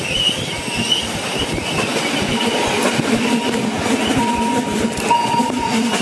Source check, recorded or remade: recorded